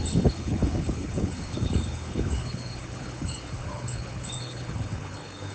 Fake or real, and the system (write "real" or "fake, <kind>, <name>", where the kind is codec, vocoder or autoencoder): fake, codec, HILCodec